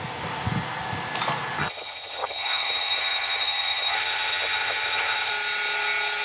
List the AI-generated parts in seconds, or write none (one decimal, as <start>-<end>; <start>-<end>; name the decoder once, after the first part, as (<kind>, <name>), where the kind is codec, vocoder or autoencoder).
1.6-5.3 (vocoder, HiFi-GAN)